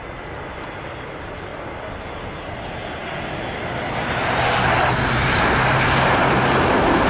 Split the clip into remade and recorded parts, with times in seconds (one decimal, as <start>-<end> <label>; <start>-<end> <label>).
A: 0.0-7.1 recorded